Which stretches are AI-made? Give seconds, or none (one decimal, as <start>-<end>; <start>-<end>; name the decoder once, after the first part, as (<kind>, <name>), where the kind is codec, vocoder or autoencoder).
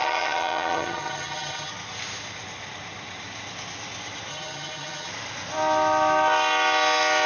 0.0-1.7 (vocoder, HiFi-GAN); 4.3-5.1